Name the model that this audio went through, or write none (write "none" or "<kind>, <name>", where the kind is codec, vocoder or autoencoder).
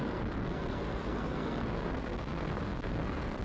codec, SNAC